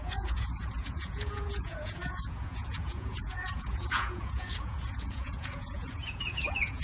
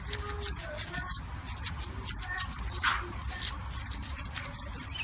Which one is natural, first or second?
second